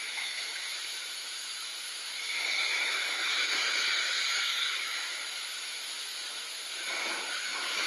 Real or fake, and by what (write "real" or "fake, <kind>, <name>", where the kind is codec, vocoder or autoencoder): fake, autoencoder, DAC-VAE